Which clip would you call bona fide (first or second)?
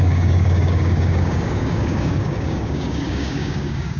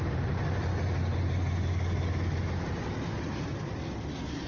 second